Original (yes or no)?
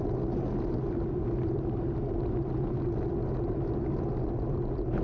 yes